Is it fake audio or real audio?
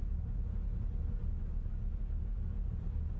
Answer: real